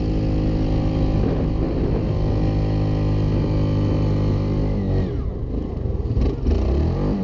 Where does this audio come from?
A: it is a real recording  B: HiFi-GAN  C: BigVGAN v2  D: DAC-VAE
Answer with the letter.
A